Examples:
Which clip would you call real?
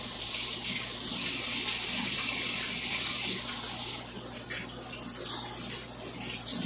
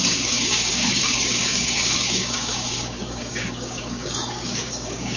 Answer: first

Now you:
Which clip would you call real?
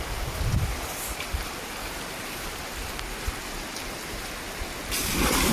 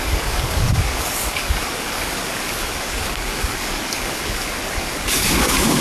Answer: first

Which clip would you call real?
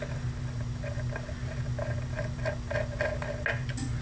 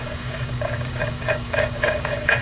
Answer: first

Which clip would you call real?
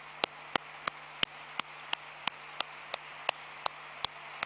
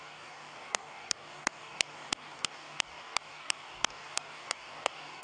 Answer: first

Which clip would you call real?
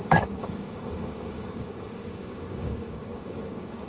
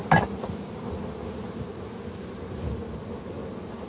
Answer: second